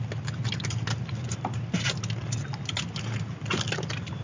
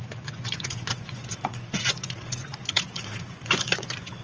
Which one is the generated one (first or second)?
second